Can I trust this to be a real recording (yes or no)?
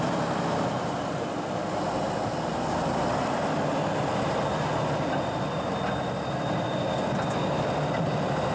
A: yes